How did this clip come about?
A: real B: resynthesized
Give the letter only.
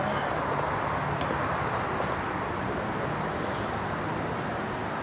A